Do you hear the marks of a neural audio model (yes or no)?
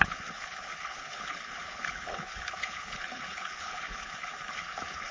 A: yes